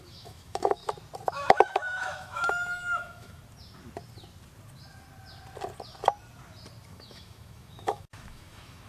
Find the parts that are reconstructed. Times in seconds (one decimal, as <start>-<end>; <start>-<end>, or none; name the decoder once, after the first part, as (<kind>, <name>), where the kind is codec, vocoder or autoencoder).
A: 0.0-0.8 (autoencoder, DAC-VAE); 1.3-3.4; 6.9-8.9